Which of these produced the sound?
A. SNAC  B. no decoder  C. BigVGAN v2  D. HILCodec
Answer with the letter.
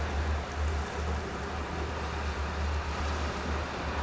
B